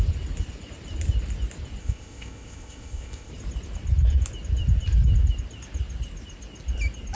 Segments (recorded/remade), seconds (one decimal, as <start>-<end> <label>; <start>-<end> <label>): 0.0-1.8 recorded; 1.8-3.3 remade; 3.3-7.2 recorded